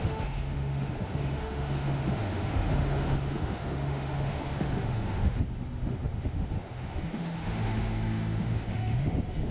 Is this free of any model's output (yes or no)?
no